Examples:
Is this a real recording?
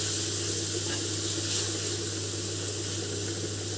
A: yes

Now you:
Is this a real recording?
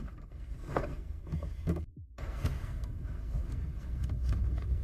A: no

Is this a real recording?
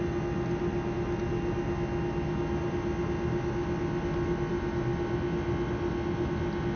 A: yes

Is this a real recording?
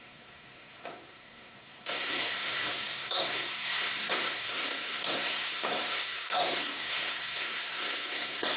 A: no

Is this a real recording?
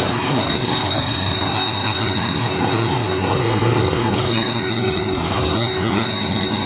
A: no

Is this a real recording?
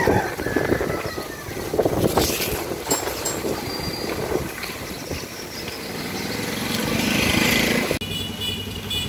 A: yes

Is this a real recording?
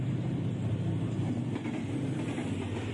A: yes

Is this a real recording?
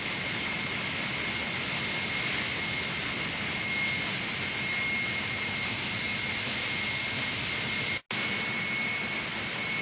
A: yes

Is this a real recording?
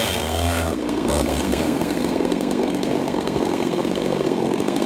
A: no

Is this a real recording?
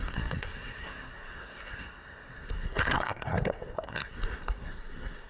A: no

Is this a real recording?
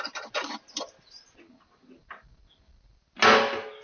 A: yes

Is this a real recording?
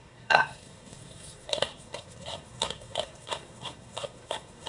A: no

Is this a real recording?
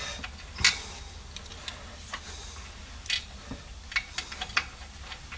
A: yes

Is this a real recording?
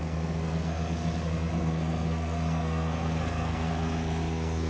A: no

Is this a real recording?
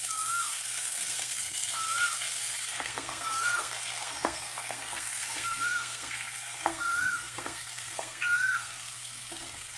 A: no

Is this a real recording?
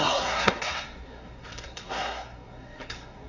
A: no